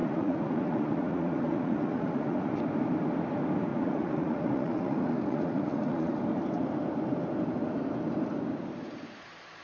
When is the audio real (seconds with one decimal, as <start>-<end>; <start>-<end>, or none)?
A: 2.6-3.7; 6.1-9.6